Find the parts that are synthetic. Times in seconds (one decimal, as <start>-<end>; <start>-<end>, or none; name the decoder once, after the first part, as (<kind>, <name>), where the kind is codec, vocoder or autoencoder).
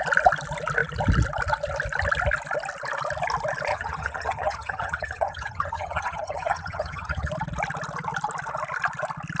3.7-7.3 (vocoder, HiFi-GAN)